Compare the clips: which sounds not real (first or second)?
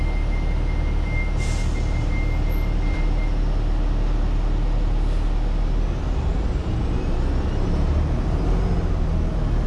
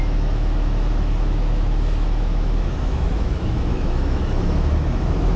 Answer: second